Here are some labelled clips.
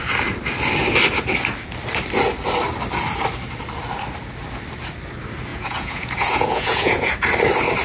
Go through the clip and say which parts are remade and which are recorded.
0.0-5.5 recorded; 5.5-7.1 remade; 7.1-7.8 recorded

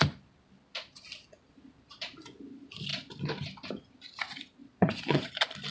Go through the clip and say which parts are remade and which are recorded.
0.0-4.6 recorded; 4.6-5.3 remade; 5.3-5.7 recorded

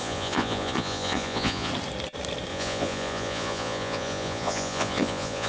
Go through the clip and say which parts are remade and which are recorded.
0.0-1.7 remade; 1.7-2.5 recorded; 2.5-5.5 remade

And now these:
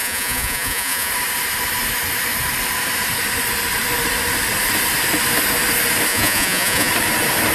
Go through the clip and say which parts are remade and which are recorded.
0.0-1.1 remade; 1.1-6.1 recorded; 6.1-6.9 remade; 6.9-7.5 recorded